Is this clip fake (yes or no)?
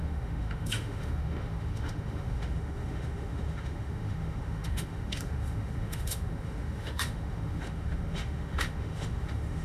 yes